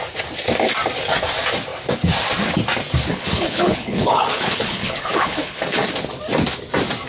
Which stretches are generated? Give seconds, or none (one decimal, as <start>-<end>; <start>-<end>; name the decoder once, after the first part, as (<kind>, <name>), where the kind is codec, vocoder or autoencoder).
3.1-5.9 (codec, HILCodec)